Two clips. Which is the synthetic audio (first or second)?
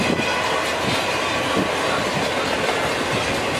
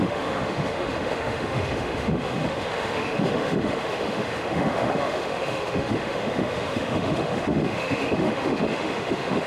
second